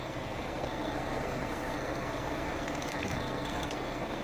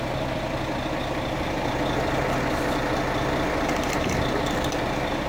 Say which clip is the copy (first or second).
first